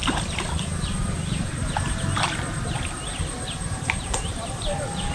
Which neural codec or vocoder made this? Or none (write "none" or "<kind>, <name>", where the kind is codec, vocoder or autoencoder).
none